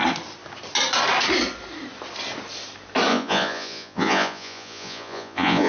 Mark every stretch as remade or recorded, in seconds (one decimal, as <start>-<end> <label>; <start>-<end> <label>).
0.0-3.1 recorded; 3.1-5.7 remade